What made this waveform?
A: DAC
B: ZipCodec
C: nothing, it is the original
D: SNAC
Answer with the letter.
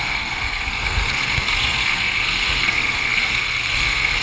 D